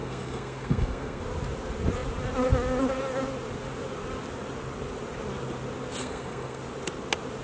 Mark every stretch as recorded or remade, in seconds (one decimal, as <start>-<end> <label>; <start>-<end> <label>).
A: 0.0-1.2 remade; 1.2-6.0 recorded; 6.0-6.6 remade; 6.6-7.4 recorded